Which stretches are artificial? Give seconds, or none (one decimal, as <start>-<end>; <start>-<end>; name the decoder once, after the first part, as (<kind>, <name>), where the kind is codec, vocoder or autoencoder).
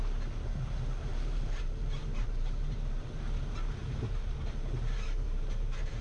1.1-3.2 (vocoder, BigVGAN v2); 3.8-6.0